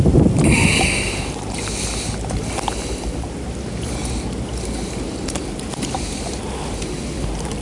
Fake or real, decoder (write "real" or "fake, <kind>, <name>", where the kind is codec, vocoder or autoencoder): real